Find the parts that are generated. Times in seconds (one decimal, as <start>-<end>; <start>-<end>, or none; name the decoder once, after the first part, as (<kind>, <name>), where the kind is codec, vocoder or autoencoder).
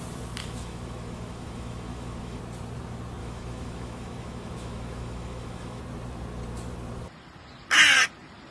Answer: 0.4-2.4 (autoencoder, DAC-VAE); 3.2-5.8